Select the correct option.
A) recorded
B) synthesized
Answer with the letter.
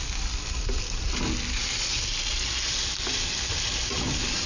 A